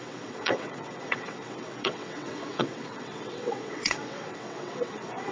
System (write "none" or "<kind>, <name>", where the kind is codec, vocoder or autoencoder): vocoder, WaveNeXt